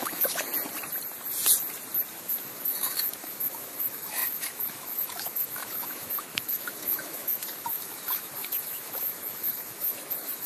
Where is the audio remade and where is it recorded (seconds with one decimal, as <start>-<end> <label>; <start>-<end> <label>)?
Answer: 0.0-0.5 remade; 0.5-2.1 recorded; 2.1-10.5 remade